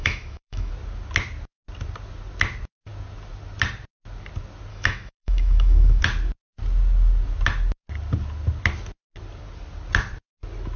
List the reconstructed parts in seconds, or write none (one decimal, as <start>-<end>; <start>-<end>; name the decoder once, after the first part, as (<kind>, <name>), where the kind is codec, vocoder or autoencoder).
0.0-0.7 (autoencoder, DAC-VAE); 4.7-6.0

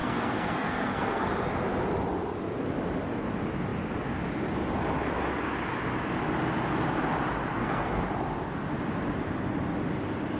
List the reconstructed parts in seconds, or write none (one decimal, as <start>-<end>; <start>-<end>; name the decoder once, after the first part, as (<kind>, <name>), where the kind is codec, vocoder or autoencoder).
0.0-1.3 (codec, SNAC); 7.5-8.0

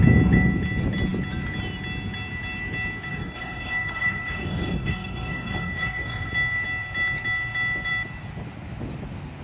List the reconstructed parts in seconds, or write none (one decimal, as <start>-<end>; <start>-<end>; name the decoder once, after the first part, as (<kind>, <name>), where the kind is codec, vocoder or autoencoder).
3.1-6.3 (codec, DAC)

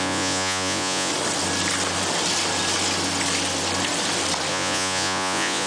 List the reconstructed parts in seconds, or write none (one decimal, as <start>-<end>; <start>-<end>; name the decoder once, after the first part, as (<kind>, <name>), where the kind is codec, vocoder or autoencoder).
0.0-1.1 (vocoder, Vocos); 4.5-5.7

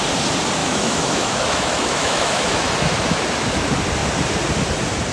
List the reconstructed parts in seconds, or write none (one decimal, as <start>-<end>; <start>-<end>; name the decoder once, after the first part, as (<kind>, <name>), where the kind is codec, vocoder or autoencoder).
0.6-2.7 (autoencoder, DAC-VAE)

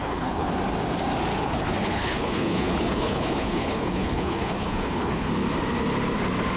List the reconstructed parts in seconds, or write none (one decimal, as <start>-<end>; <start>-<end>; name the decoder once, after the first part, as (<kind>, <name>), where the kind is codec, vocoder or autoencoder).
0.0-0.5 (codec, HILCodec); 1.3-5.3

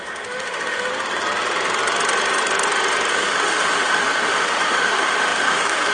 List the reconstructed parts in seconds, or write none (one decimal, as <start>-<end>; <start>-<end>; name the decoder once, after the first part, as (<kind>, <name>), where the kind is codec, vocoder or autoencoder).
0.0-0.9 (autoencoder, DAC-VAE); 3.1-5.9

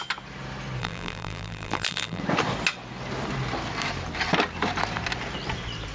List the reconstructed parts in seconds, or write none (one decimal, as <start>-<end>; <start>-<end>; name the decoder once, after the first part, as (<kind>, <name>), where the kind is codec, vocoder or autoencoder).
0.8-2.2 (vocoder, BigVGAN v2)